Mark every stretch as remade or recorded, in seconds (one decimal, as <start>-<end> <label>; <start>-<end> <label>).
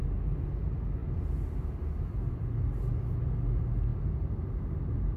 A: 0.0-5.2 recorded